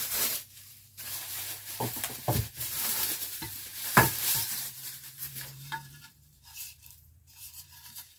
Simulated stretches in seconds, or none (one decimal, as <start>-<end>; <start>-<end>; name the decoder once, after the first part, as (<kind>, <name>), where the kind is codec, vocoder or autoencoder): 0.0-8.2 (vocoder, BigVGAN v2)